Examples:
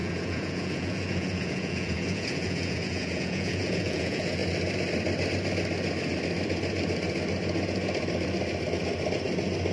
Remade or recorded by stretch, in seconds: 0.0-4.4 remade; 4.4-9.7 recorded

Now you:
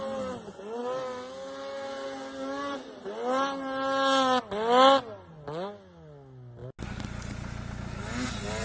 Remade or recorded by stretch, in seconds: 0.0-8.6 recorded

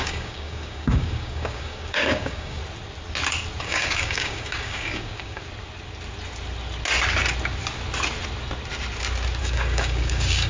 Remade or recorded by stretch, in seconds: 0.0-2.6 remade; 2.6-3.6 recorded; 3.6-5.4 remade; 5.4-9.4 recorded; 9.4-10.5 remade

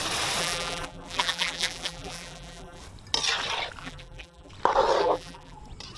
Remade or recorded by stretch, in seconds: 0.0-0.4 recorded; 0.4-2.8 remade; 2.8-3.8 recorded; 3.8-4.5 remade; 4.5-5.0 recorded; 5.0-5.6 remade; 5.6-6.0 recorded

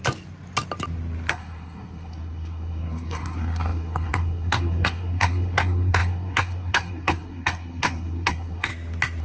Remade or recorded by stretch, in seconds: 0.0-1.3 recorded; 1.3-8.7 remade; 8.7-9.2 recorded

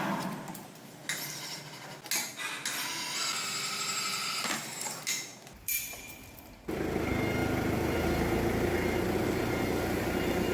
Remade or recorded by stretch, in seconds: 0.0-5.3 recorded; 5.3-5.8 remade; 5.8-7.4 recorded; 7.4-8.7 remade; 8.7-10.5 recorded